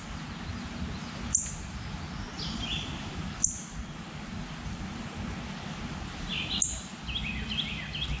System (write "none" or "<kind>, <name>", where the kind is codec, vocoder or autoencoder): none